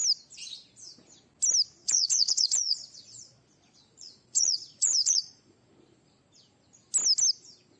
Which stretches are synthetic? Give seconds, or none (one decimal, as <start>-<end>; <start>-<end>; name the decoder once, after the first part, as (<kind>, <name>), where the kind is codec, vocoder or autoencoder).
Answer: 1.8-5.7 (vocoder, Vocos)